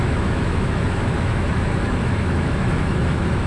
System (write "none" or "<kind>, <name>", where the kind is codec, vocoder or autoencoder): autoencoder, DAC-VAE